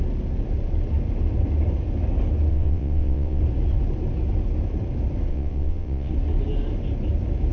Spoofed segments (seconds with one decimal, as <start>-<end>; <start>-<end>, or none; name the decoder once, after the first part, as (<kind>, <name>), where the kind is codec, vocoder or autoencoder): 2.5-3.4 (vocoder, WaveNeXt); 5.3-6.1